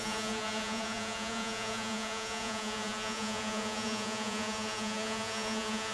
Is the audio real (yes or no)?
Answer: no